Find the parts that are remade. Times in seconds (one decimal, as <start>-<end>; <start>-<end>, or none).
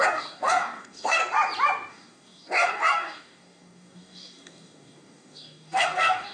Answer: 0.0-1.2; 1.9-6.3